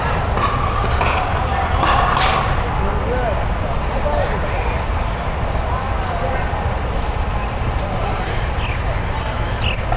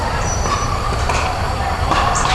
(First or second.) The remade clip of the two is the second